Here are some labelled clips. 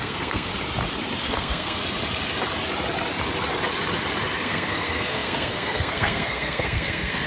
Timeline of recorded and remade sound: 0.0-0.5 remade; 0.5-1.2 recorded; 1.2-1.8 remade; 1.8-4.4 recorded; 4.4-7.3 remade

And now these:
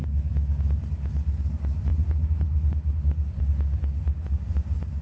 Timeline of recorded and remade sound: 0.0-5.0 recorded

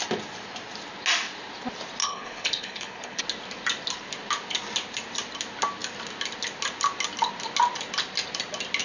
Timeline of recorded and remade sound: 0.0-2.0 recorded; 2.0-3.2 remade; 3.2-8.8 recorded